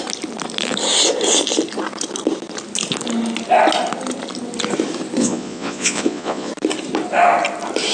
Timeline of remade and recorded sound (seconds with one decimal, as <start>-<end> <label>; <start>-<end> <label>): 0.0-5.2 recorded; 5.2-6.5 remade; 6.5-7.9 recorded